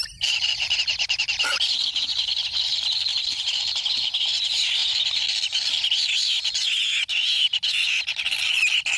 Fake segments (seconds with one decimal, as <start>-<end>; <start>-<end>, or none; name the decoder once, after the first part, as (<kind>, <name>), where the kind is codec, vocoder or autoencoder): none